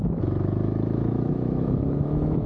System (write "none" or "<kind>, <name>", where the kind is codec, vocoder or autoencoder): autoencoder, DAC-VAE